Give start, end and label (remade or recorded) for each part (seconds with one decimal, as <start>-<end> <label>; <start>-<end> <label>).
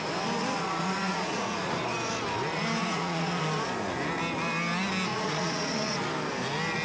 0.0-0.4 recorded; 0.4-1.8 remade; 1.8-2.8 recorded; 2.8-3.4 remade; 3.4-5.1 recorded; 5.1-6.0 remade; 6.0-6.8 recorded